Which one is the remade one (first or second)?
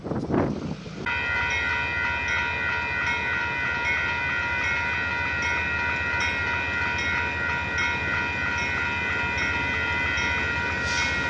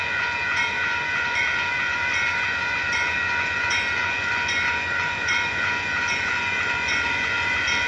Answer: second